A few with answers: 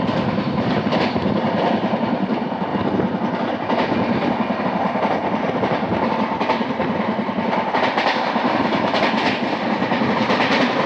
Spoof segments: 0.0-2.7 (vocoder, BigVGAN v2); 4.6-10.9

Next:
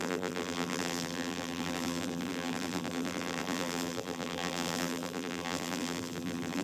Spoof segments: 0.0-6.6 (vocoder, BigVGAN v2)

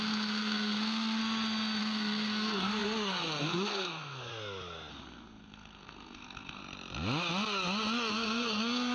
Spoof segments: 0.0-1.2 (codec, SNAC); 1.8-4.3; 4.9-6.6; 8.1-8.9